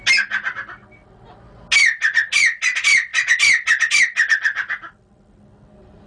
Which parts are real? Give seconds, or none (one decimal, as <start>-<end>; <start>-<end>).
0.0-6.1